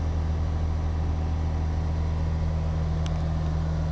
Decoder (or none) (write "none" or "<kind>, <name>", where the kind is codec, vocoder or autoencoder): none